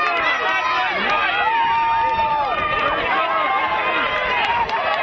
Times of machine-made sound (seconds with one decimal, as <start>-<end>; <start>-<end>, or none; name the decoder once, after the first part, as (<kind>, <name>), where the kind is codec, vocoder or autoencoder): none